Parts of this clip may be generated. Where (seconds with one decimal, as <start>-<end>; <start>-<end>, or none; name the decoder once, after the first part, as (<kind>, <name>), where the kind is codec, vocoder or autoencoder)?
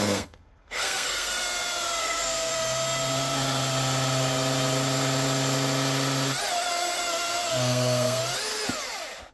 0.0-1.3 (codec, SNAC); 2.0-2.5; 7.5-8.2